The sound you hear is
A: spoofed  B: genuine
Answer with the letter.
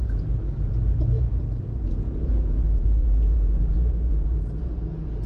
A